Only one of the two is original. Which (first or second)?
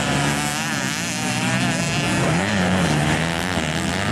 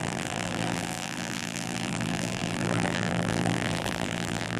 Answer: first